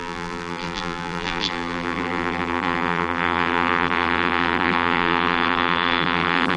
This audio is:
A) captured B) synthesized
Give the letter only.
B